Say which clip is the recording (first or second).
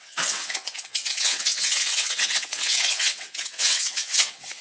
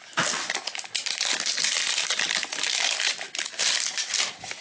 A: second